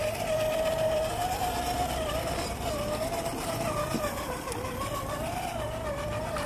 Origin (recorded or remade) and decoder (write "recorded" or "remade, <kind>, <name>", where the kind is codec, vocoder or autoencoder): remade, vocoder, BigVGAN v2